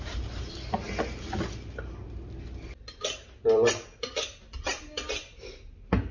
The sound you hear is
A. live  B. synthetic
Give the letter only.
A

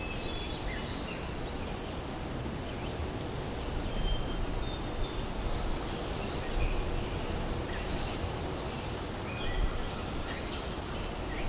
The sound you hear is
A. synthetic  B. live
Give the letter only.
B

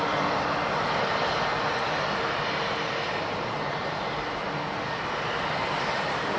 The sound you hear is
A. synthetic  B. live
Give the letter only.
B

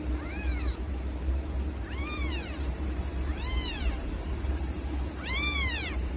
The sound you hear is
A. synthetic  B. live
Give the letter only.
A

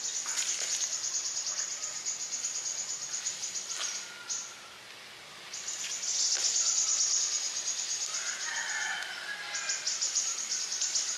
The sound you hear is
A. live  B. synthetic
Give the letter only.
A